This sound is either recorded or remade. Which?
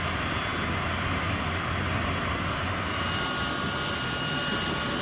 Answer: recorded